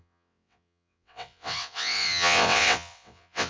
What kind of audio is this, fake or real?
fake